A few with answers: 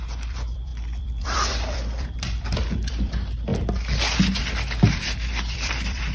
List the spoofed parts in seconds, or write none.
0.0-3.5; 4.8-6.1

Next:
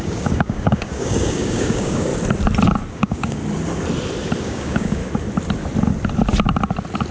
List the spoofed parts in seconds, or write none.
0.0-2.1; 2.9-3.4; 4.4-5.0